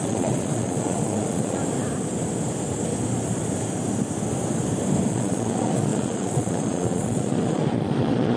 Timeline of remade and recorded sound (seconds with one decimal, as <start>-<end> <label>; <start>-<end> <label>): 0.0-1.6 remade; 1.6-5.1 recorded; 5.1-8.4 remade